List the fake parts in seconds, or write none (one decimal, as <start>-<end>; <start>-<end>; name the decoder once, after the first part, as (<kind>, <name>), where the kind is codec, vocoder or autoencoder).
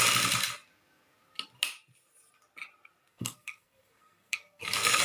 3.1-5.0 (codec, SNAC)